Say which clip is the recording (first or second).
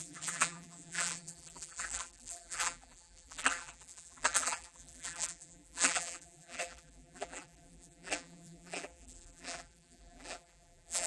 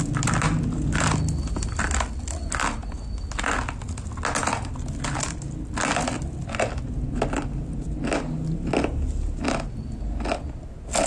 second